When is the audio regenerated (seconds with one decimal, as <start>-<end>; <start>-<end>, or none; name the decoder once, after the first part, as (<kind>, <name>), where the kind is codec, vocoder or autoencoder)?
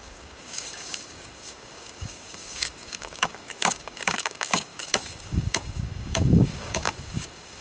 0.0-7.6 (codec, DAC)